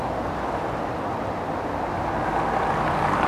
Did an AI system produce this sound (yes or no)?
no